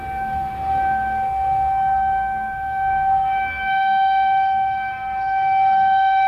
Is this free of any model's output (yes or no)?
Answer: no